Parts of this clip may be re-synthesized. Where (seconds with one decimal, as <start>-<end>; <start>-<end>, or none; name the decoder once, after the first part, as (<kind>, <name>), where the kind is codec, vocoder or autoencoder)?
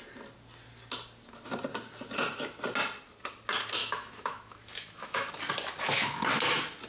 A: 3.8-5.3 (autoencoder, DAC-VAE)